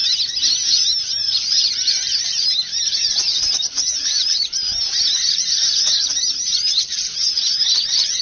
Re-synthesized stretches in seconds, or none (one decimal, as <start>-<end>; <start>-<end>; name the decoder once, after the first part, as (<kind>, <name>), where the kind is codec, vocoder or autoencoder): 0.7-8.2 (vocoder, BigVGAN v2)